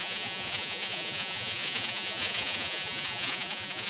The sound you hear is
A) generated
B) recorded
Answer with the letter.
A